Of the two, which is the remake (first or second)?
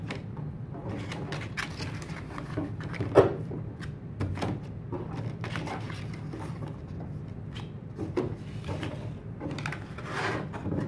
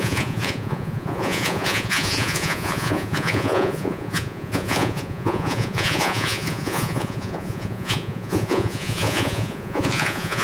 second